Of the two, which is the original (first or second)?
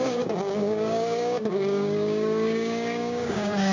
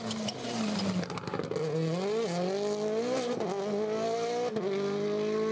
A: second